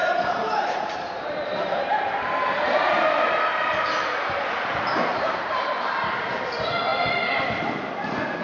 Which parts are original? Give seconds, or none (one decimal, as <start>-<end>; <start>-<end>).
2.9-3.5; 6.4-8.4